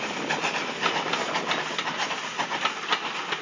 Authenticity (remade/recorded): recorded